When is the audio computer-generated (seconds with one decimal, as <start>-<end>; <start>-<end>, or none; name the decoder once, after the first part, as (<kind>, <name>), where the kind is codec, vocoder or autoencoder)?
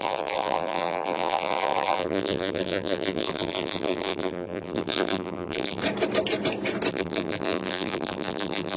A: 0.0-5.8 (vocoder, BigVGAN v2); 6.9-8.8